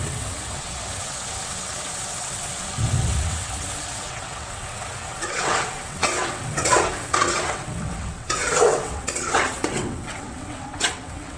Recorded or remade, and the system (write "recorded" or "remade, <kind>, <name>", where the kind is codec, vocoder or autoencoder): remade, vocoder, WaveNeXt